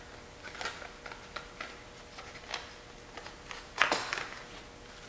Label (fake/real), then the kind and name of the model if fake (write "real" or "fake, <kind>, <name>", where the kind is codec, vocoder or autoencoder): real